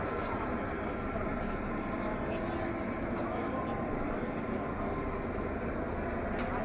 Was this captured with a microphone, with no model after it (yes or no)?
yes